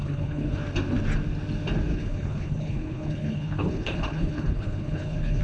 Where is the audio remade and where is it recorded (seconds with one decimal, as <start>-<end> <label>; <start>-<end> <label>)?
0.0-0.6 remade; 0.6-1.9 recorded; 1.9-5.4 remade

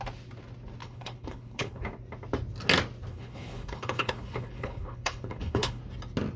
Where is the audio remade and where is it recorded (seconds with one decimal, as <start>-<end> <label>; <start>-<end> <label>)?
0.0-0.8 recorded; 0.8-1.8 remade; 1.8-3.1 recorded; 3.1-5.8 remade; 5.8-6.4 recorded

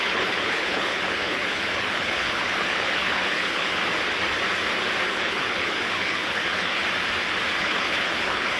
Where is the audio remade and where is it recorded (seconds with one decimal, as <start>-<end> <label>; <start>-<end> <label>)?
0.0-3.8 remade; 3.8-5.1 recorded; 5.1-6.8 remade; 6.8-7.6 recorded; 7.6-8.6 remade

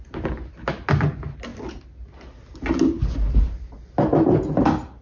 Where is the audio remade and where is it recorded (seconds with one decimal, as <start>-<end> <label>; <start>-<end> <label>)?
0.0-5.0 recorded

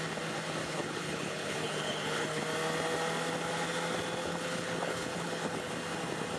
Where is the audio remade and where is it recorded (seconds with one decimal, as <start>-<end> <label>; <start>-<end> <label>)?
0.0-0.6 recorded; 0.6-2.4 remade; 2.4-4.2 recorded; 4.2-5.7 remade; 5.7-6.4 recorded

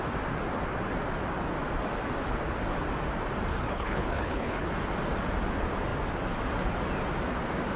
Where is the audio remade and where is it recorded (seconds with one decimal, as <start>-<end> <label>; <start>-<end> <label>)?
0.0-3.5 recorded; 3.5-4.7 remade; 4.7-7.8 recorded

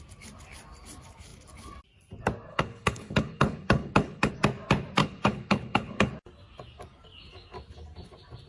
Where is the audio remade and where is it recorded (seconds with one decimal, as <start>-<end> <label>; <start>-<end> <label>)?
0.0-2.5 recorded; 2.5-4.3 remade; 4.3-5.0 recorded; 5.0-6.1 remade; 6.1-8.5 recorded